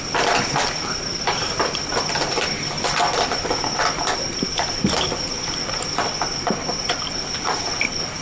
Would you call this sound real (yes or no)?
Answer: yes